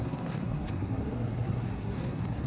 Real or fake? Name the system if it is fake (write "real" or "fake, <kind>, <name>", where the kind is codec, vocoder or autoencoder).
fake, codec, SNAC